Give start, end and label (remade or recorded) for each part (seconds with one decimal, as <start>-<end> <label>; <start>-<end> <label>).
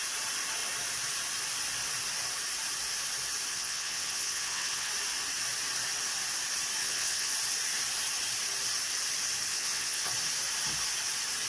0.0-3.5 recorded; 3.5-4.9 remade; 4.9-6.8 recorded; 6.8-7.3 remade; 7.3-9.5 recorded; 9.5-10.1 remade; 10.1-11.5 recorded